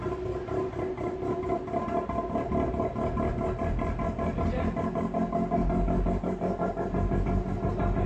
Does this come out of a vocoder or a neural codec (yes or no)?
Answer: no